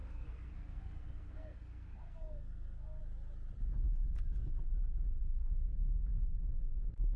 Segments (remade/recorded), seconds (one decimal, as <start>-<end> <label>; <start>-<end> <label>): 0.0-3.0 remade; 3.0-5.2 recorded; 5.2-7.2 remade